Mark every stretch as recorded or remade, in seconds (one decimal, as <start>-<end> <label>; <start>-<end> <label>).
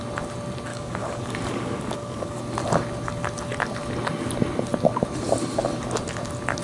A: 0.0-0.7 recorded; 0.7-2.4 remade; 2.4-6.6 recorded